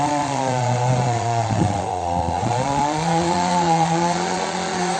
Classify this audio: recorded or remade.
remade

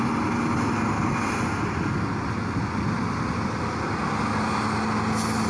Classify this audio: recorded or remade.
recorded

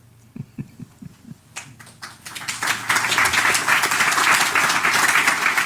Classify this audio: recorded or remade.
recorded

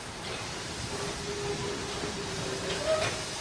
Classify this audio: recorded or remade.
recorded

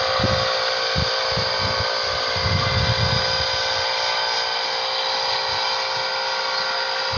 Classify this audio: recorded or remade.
recorded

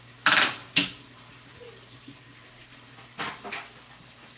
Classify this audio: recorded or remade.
recorded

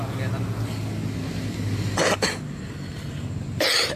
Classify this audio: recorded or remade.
recorded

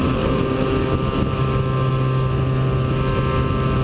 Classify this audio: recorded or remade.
recorded